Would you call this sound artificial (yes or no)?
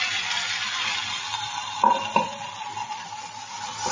no